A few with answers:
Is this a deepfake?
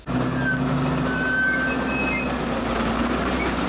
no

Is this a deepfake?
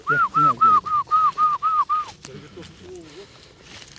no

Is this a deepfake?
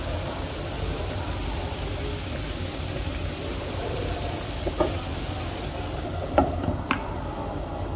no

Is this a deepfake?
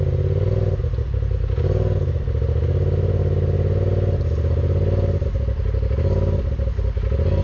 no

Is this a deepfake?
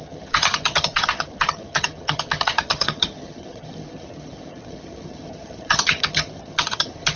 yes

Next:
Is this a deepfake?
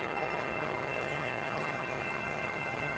yes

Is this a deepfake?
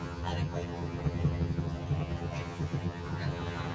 yes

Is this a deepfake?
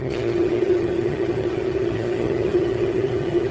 yes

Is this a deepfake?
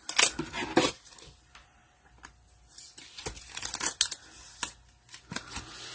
no